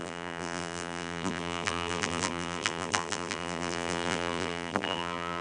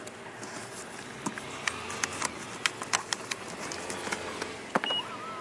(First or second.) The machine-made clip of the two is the first